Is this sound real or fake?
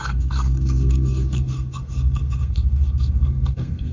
fake